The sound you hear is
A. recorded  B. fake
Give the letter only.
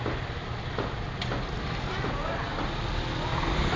A